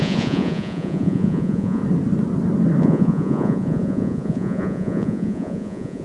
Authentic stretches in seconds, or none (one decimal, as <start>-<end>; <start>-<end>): 1.8-2.8